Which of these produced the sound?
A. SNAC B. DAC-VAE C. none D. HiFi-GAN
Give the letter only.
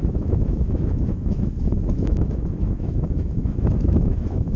B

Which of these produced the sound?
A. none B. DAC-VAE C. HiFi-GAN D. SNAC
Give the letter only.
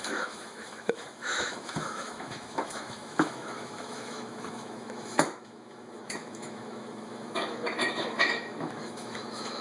B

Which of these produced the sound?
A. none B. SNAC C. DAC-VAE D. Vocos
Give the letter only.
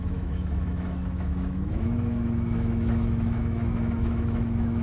C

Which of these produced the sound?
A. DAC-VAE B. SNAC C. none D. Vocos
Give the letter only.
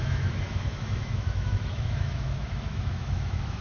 A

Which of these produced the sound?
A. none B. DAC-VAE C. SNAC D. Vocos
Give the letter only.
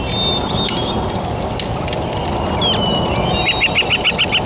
A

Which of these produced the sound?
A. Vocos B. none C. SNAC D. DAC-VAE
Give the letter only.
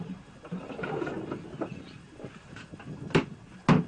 B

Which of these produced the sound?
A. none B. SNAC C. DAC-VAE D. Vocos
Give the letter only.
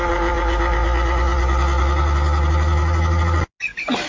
A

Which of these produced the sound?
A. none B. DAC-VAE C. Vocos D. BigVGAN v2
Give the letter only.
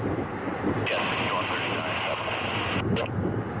A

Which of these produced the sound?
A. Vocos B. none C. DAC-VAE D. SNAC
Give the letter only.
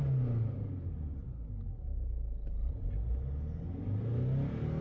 B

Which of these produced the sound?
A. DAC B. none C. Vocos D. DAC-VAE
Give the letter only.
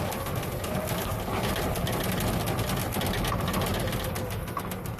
B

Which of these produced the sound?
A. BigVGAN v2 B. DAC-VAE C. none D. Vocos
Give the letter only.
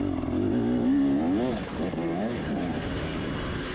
C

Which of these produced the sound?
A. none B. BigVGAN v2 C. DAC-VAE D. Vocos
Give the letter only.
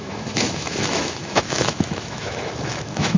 C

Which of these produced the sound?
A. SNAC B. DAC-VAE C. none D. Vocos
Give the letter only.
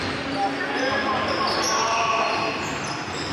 C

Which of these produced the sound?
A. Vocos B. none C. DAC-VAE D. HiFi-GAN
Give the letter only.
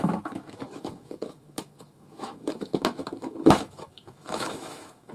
C